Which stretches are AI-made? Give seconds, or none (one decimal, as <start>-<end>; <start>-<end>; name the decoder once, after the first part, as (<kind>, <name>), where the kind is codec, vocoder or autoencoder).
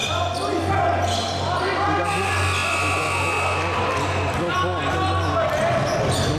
none